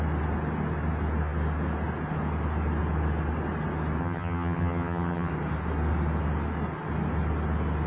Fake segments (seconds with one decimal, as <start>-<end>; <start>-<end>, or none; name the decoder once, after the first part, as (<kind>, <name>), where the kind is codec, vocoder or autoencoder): 4.0-5.3 (vocoder, HiFi-GAN)